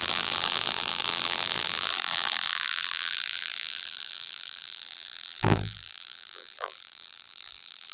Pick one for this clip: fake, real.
fake